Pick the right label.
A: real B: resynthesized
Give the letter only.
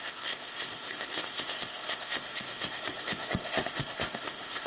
B